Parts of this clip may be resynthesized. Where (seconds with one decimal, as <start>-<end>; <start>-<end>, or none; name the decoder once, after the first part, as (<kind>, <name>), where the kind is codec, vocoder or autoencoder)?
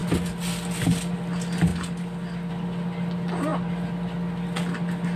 none